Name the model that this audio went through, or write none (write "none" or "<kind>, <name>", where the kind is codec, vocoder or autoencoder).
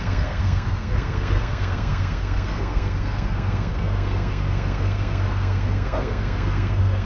codec, SNAC